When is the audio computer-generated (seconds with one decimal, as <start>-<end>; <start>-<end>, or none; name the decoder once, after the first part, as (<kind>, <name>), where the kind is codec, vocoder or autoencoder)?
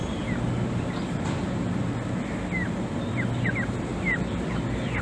3.9-4.5 (vocoder, BigVGAN v2)